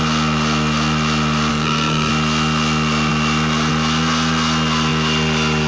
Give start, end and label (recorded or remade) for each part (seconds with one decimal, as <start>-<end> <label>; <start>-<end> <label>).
0.0-1.5 recorded; 1.5-2.1 remade; 2.1-5.7 recorded

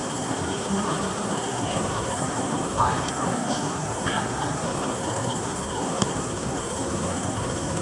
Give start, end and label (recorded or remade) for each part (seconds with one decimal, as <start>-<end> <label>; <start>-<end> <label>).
0.0-7.8 remade

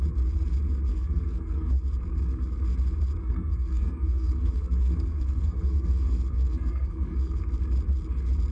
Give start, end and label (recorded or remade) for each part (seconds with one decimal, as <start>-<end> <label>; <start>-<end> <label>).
0.0-0.9 recorded; 0.9-1.7 remade; 1.7-3.2 recorded; 3.2-7.4 remade; 7.4-8.5 recorded

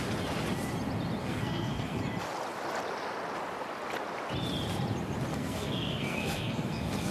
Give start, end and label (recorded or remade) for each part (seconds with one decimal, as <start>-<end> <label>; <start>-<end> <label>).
0.0-1.2 recorded; 1.2-2.0 remade; 2.0-5.3 recorded; 5.3-7.1 remade

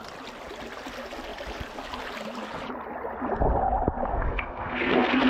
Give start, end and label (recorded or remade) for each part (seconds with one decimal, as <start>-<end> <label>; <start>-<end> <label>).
0.0-4.1 recorded; 4.1-5.3 remade

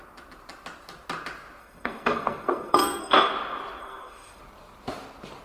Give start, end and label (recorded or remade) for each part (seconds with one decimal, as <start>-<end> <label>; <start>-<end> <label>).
0.0-1.6 recorded; 1.6-3.3 remade; 3.3-3.8 recorded; 3.8-4.4 remade; 4.4-5.4 recorded

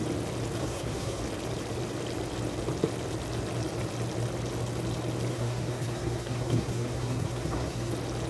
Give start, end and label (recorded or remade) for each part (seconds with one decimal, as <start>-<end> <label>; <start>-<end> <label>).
0.0-0.6 recorded; 0.6-1.2 remade; 1.2-5.3 recorded; 5.3-7.9 remade; 7.9-8.3 recorded

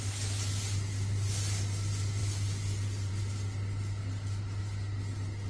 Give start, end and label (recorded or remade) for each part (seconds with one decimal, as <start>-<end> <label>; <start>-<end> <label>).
0.0-5.5 recorded